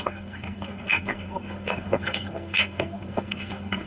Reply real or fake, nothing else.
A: fake